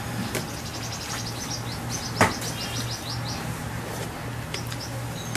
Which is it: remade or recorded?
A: recorded